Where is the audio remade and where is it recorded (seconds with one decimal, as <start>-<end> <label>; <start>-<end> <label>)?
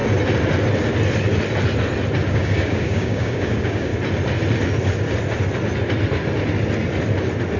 0.0-2.3 recorded; 2.3-3.9 remade; 3.9-7.6 recorded